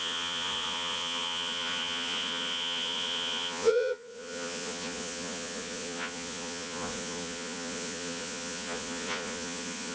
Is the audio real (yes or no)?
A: no